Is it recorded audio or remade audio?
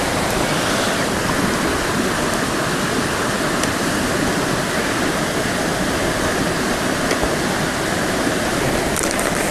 recorded